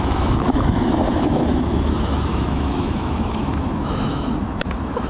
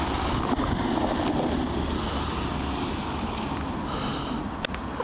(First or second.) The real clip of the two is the second